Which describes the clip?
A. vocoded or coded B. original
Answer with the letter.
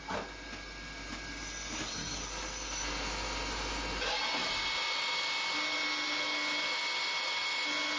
B